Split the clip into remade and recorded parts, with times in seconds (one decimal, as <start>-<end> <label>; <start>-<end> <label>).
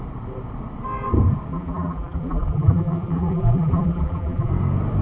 0.0-1.5 recorded; 1.5-4.5 remade; 4.5-5.0 recorded